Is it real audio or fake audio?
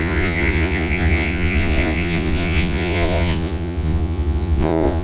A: fake